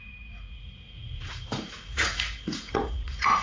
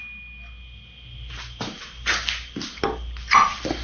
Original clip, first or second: second